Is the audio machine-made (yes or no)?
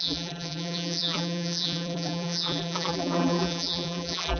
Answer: yes